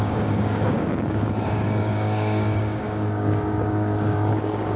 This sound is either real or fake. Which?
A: fake